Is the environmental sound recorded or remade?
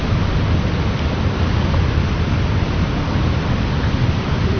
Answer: recorded